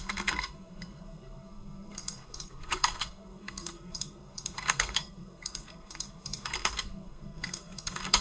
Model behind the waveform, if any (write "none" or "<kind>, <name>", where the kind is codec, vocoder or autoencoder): codec, SNAC